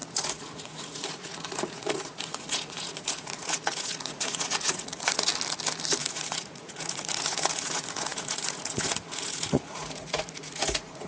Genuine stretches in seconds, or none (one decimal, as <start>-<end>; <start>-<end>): 5.3-6.0